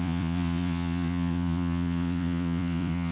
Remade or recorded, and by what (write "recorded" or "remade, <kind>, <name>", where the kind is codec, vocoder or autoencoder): remade, vocoder, Vocos